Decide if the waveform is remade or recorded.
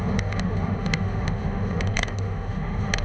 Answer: remade